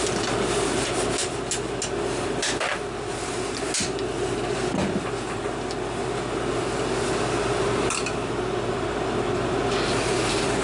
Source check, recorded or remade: recorded